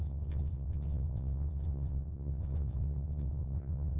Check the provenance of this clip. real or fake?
fake